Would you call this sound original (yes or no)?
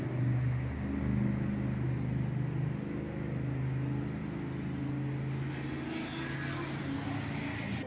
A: yes